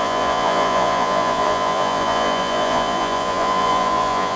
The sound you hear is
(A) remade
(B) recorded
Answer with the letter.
A